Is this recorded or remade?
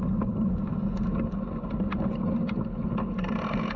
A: recorded